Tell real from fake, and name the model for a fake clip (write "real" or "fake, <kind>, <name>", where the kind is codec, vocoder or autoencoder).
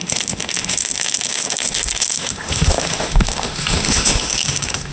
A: fake, autoencoder, DAC-VAE